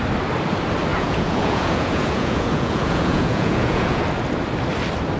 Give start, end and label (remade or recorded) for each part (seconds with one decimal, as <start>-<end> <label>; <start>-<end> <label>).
0.0-0.9 recorded; 0.9-4.0 remade; 4.0-5.2 recorded